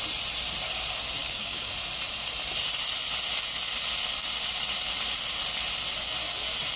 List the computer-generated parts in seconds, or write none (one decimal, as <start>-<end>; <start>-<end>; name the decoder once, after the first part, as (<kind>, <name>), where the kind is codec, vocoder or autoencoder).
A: 1.2-1.7 (codec, DAC)